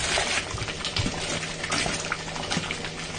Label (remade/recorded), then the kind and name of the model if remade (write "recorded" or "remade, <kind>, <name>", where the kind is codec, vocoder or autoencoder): recorded